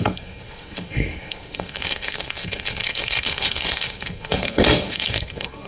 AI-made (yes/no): yes